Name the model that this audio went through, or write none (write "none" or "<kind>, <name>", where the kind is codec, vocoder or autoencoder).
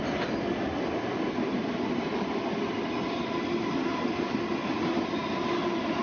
none